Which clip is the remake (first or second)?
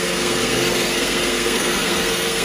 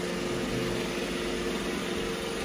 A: first